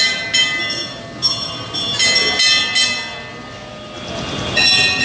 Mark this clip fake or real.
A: real